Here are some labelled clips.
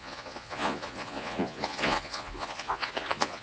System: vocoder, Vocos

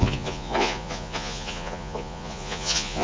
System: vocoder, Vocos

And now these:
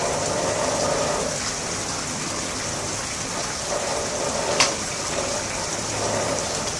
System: none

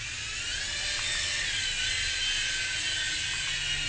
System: none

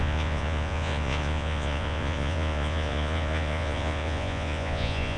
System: vocoder, Vocos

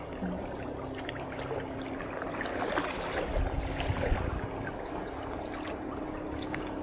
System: none